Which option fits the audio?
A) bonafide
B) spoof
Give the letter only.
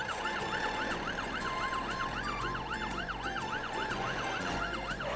B